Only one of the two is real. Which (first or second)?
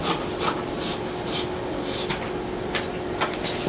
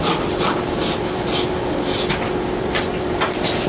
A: first